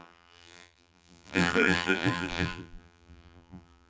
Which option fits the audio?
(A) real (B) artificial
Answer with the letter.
B